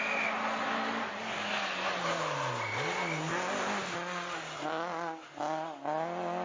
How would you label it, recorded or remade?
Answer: recorded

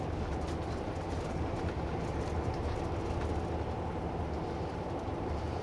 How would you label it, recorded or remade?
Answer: recorded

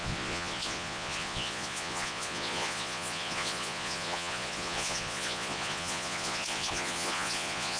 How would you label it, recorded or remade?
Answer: remade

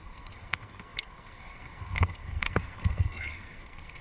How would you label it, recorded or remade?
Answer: remade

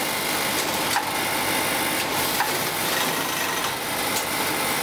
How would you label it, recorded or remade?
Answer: recorded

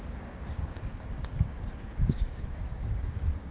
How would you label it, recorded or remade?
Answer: remade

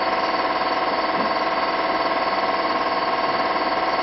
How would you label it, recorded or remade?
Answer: recorded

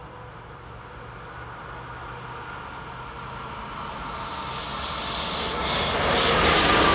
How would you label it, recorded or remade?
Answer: recorded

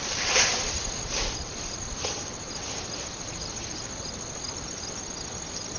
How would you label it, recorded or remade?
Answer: recorded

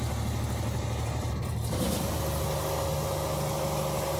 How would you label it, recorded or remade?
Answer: recorded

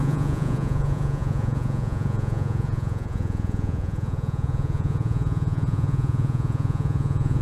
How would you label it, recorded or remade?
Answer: remade